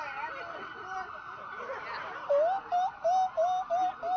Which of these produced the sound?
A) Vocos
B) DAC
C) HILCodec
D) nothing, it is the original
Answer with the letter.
D